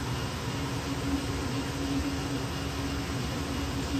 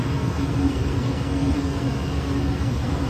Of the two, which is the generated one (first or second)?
second